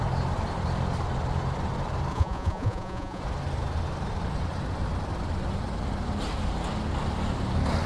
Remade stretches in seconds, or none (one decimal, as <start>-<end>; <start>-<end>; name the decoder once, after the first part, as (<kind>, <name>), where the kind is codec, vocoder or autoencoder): 2.1-3.2 (vocoder, Vocos)